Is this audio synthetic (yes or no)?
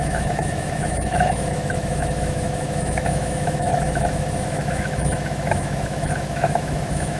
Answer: yes